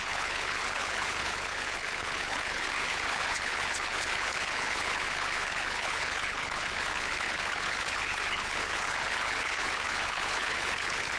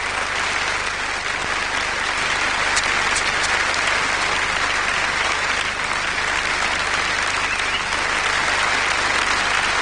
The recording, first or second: second